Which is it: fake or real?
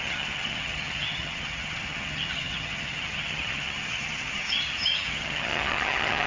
fake